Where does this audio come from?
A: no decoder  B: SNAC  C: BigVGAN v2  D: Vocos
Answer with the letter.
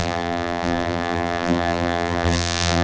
C